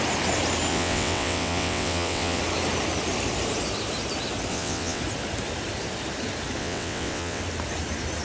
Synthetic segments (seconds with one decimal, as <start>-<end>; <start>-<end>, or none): 0.7-2.4; 4.5-5.0; 6.6-7.4